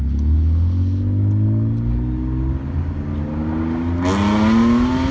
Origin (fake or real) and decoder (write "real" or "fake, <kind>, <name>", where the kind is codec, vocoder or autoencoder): real